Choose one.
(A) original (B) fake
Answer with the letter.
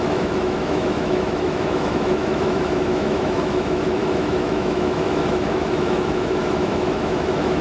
B